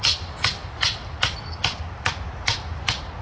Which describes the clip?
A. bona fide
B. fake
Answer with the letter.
B